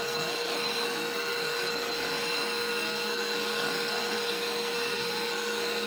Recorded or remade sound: remade